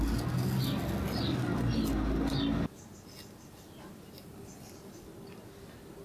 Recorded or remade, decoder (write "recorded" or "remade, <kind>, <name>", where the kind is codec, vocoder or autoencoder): recorded